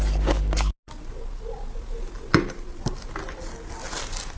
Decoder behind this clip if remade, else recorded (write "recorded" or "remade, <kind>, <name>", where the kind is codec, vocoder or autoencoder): recorded